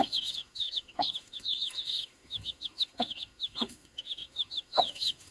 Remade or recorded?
remade